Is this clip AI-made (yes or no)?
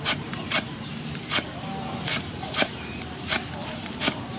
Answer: yes